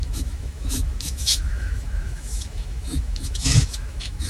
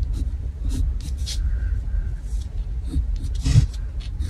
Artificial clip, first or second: first